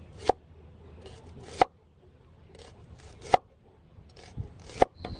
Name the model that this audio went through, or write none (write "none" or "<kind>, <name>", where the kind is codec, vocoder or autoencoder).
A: none